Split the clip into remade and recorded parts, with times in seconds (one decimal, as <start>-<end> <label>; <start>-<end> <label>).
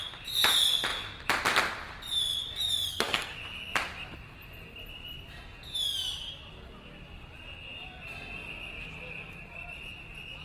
0.0-2.9 recorded; 2.9-3.4 remade; 3.4-10.4 recorded